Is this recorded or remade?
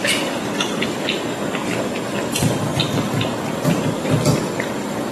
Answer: recorded